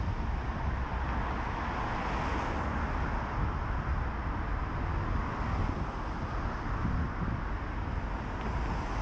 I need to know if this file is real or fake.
real